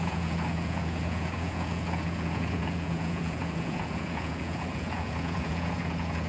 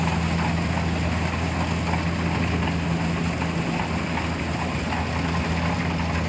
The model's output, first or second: first